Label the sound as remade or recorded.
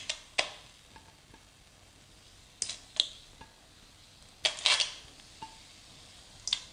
recorded